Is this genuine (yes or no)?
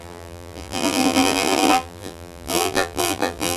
no